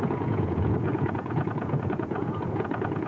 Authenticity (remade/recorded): remade